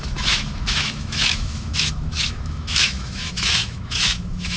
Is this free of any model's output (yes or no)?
no